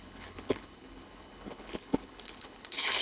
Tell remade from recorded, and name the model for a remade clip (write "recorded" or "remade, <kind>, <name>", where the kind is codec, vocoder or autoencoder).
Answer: remade, codec, HILCodec